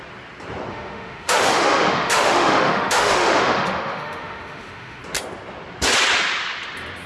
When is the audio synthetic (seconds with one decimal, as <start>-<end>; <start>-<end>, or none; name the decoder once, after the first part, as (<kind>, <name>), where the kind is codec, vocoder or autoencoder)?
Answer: 0.7-5.0 (autoencoder, DAC-VAE)